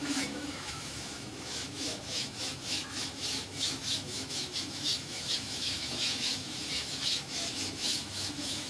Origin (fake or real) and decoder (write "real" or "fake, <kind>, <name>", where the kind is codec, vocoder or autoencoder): fake, autoencoder, DAC-VAE